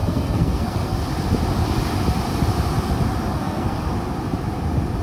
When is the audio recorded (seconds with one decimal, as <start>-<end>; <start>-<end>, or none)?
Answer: 1.0-3.3; 3.9-5.0